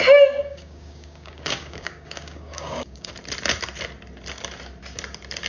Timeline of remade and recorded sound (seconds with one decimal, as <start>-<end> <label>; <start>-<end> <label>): 0.0-0.4 recorded; 0.4-3.1 remade; 3.1-5.5 recorded